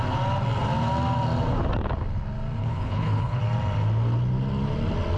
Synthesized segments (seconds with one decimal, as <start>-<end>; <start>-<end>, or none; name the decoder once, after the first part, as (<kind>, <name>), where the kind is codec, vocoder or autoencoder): 2.6-3.4 (codec, HILCodec)